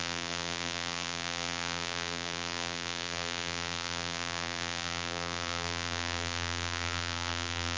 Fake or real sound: fake